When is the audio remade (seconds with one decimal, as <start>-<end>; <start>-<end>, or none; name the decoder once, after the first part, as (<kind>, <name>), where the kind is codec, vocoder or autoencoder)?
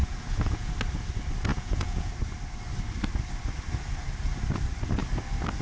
0.0-0.7 (vocoder, Vocos); 1.5-2.1